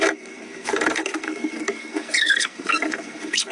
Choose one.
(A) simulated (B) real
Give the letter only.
A